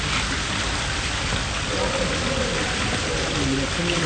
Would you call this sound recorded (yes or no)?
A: yes